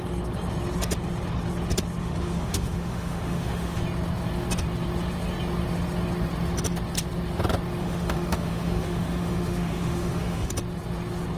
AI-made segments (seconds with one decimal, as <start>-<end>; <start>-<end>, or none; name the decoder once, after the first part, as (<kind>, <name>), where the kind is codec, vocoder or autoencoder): 2.0-3.8 (autoencoder, DAC-VAE); 7.8-10.5